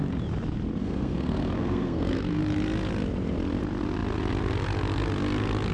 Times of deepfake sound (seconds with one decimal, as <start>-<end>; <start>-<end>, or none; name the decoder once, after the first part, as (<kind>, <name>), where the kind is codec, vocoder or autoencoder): 0.8-2.4 (codec, SNAC)